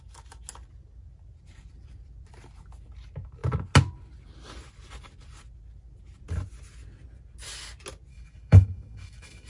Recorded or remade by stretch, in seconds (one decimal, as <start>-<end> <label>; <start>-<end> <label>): 0.0-8.1 recorded; 8.1-9.5 remade